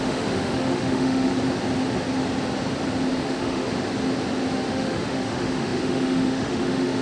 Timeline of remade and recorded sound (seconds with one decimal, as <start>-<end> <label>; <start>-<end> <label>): 0.0-1.3 remade; 1.3-3.1 recorded; 3.1-3.7 remade; 3.7-4.7 recorded; 4.7-7.0 remade